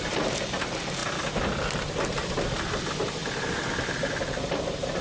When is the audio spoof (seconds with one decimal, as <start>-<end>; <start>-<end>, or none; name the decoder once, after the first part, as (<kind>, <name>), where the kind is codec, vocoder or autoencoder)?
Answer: 0.0-1.0 (vocoder, BigVGAN v2); 2.7-3.2; 4.4-5.0